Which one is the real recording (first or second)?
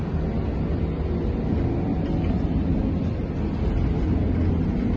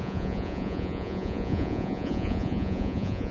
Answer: first